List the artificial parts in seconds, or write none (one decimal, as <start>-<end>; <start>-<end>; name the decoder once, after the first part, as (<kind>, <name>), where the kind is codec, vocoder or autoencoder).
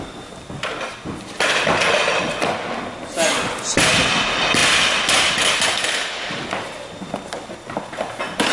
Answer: none